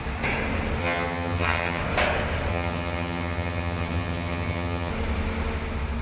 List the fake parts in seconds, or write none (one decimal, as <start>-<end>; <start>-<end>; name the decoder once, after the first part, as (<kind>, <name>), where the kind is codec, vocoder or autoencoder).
0.8-1.8 (vocoder, HiFi-GAN); 2.5-4.9